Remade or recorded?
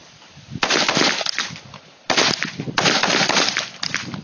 recorded